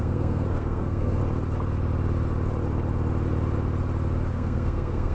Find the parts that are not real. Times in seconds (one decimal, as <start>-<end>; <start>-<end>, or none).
0.0-1.2; 4.3-5.1